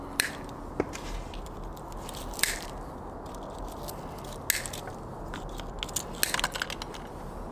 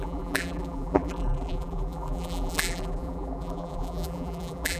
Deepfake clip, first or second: second